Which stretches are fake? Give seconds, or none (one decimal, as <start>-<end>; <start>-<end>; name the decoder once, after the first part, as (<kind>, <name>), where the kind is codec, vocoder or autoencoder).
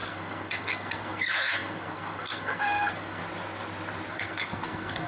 0.0-3.2 (codec, SNAC); 4.1-5.1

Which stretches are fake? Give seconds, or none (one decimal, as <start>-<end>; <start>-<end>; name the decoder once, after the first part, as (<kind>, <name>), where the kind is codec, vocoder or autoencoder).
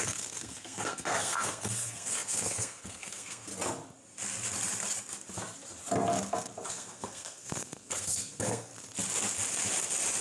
0.0-3.5 (codec, SNAC); 6.7-8.7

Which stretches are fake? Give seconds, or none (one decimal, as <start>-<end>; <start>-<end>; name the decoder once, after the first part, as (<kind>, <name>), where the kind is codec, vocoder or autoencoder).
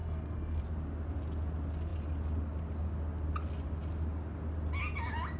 0.0-0.6 (codec, SNAC)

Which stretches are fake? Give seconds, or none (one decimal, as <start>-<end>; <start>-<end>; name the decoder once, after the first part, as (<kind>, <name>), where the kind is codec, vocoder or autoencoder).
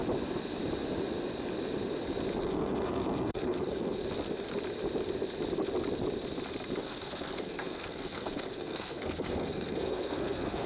2.4-4.0 (codec, SNAC); 6.8-10.7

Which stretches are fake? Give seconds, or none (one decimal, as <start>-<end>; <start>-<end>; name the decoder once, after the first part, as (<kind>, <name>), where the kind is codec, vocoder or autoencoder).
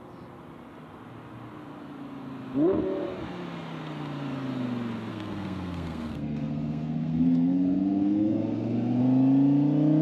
5.1-9.0 (codec, SNAC)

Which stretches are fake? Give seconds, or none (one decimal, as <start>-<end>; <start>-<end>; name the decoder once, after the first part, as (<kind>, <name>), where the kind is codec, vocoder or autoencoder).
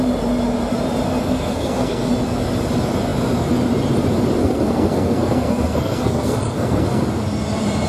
1.2-2.1 (codec, SNAC); 4.4-7.0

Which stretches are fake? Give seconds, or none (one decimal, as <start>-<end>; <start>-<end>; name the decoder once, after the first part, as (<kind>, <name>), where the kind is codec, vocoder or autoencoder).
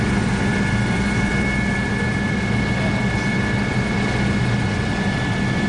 none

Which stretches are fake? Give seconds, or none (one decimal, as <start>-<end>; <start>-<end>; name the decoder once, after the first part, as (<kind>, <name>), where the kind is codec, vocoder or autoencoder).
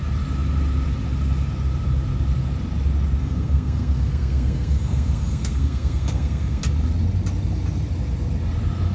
3.2-6.6 (codec, SNAC)